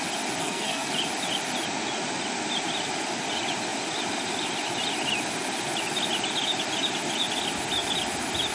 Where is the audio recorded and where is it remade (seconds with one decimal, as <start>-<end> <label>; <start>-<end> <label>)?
0.0-0.4 recorded; 0.4-0.9 remade; 0.9-8.5 recorded